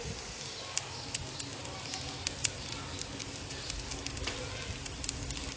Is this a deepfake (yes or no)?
no